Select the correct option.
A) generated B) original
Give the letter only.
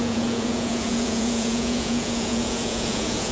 A